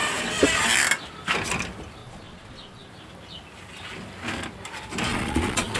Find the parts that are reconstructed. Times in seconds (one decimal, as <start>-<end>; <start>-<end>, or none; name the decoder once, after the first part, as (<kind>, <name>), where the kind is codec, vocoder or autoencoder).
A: 2.0-2.9 (vocoder, Vocos); 5.1-5.8